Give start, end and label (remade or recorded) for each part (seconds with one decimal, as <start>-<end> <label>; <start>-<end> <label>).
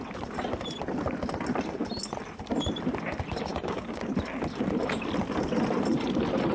0.0-3.5 recorded; 3.5-4.1 remade; 4.1-6.5 recorded